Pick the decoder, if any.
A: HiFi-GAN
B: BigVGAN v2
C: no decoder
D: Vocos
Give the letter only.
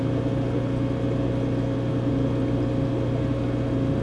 C